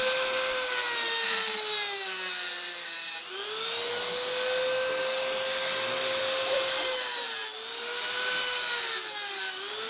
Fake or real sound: real